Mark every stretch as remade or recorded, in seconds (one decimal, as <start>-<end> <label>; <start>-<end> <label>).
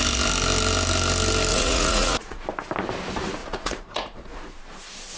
0.0-1.5 recorded; 1.5-2.4 remade; 2.4-3.4 recorded; 3.4-4.6 remade; 4.6-5.2 recorded